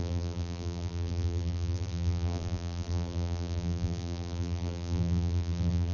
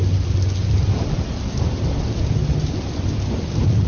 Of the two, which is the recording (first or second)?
second